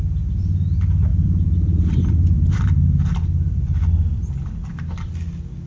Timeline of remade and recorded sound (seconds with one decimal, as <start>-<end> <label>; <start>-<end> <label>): 0.0-1.1 recorded; 1.1-4.5 remade; 4.5-5.7 recorded